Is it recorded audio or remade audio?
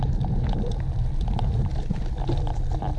recorded